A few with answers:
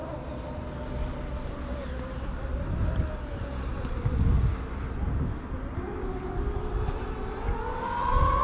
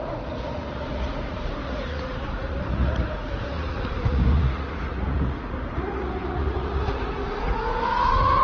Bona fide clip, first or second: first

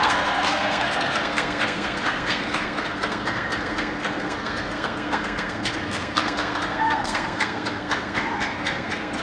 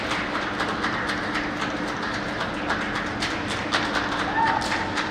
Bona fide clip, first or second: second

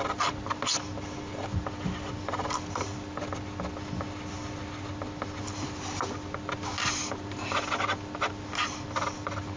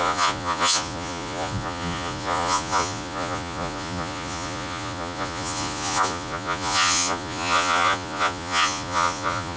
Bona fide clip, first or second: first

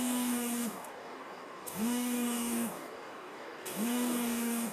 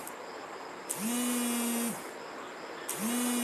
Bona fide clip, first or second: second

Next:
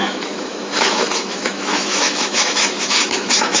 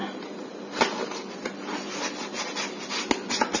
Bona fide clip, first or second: second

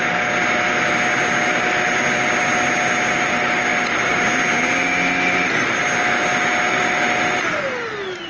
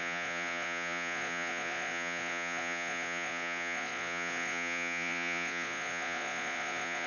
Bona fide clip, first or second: first